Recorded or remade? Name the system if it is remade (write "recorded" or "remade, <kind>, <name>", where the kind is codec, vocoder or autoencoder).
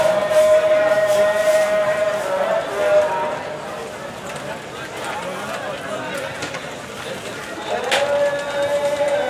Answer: recorded